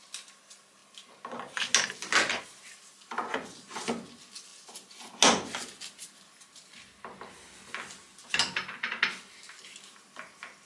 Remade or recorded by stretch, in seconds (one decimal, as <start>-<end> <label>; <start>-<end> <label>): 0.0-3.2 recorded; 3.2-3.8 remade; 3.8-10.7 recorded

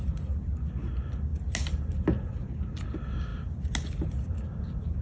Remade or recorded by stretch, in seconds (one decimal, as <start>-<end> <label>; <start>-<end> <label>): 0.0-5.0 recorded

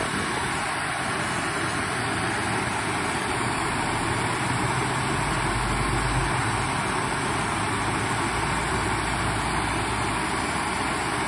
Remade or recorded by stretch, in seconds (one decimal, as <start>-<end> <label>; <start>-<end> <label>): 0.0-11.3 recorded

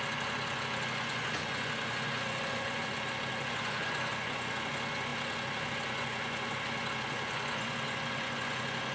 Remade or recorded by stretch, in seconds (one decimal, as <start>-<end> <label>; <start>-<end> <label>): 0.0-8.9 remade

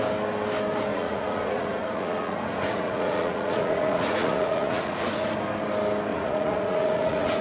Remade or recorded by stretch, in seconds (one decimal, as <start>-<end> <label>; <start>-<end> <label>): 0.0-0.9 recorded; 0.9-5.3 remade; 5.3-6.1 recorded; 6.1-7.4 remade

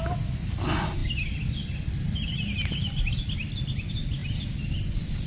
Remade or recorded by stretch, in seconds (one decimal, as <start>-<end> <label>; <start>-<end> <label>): 0.0-5.3 recorded

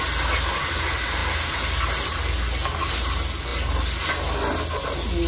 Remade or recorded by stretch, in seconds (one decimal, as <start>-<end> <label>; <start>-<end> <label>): 0.0-5.3 recorded

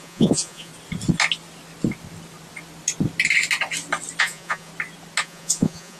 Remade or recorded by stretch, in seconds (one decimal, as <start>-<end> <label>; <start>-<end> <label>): 0.0-0.7 remade; 0.7-4.2 recorded; 4.2-4.7 remade; 4.7-5.2 recorded; 5.2-6.0 remade